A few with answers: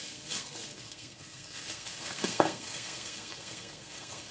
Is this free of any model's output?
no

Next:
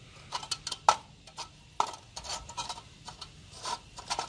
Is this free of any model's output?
yes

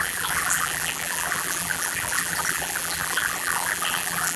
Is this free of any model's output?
no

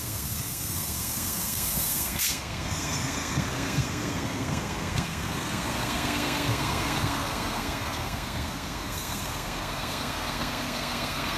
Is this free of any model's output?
no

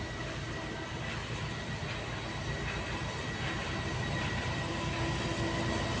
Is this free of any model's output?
yes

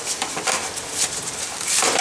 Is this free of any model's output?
yes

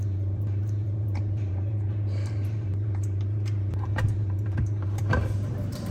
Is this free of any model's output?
no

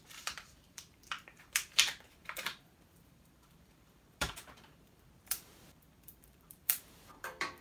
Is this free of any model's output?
no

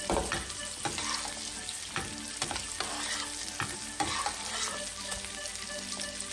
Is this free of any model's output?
yes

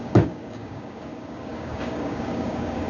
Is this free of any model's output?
no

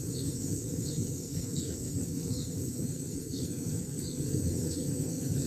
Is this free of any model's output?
no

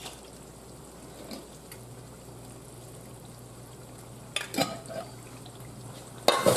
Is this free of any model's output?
yes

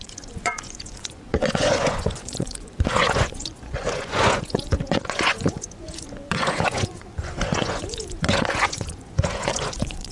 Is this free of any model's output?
no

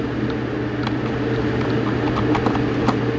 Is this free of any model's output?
yes